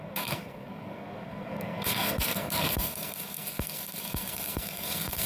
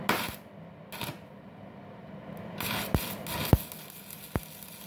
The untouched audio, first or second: second